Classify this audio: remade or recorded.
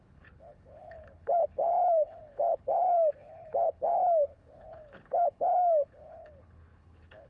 remade